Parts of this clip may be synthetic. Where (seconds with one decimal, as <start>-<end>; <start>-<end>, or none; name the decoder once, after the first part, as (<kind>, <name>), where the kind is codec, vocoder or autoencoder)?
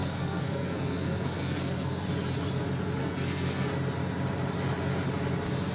0.0-2.1 (codec, SNAC); 3.0-3.7